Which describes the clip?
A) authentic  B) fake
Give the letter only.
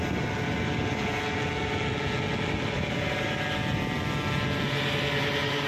A